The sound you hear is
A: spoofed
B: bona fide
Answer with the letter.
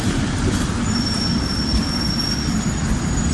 B